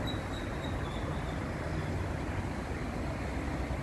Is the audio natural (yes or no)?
yes